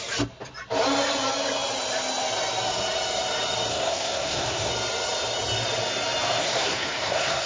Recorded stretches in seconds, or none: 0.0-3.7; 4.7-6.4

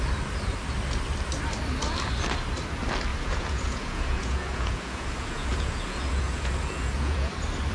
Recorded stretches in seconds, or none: 0.0-3.1; 7.3-7.7

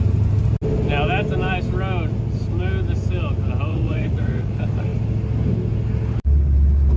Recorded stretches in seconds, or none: 0.0-3.7; 4.5-7.0

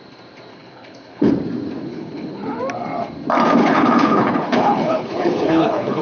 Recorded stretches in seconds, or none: 0.0-0.5; 1.3-1.8; 2.6-3.6

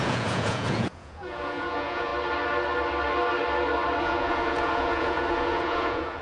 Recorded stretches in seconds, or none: 2.1-4.0

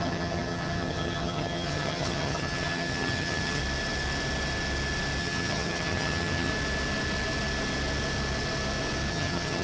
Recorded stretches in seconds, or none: 3.6-5.2; 6.5-9.1